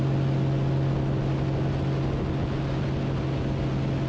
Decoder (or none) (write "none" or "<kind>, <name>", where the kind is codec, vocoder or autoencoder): none